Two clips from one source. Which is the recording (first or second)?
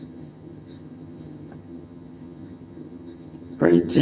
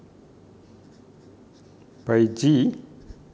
second